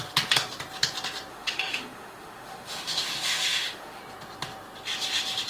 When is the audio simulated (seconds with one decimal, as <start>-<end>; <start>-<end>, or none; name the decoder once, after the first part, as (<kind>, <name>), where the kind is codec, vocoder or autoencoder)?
1.3-4.0 (autoencoder, DAC-VAE)